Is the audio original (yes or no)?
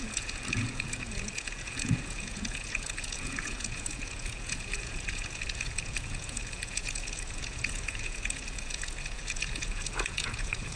no